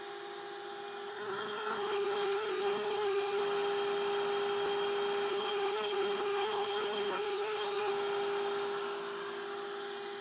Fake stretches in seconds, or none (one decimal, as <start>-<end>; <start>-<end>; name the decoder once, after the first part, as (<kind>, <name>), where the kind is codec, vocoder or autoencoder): 1.1-3.4 (codec, SNAC); 5.3-7.9

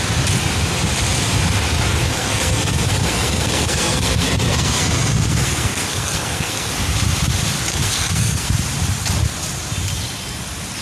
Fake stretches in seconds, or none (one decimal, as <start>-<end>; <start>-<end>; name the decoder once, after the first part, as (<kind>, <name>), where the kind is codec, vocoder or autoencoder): 2.0-6.7 (codec, SNAC); 7.7-8.5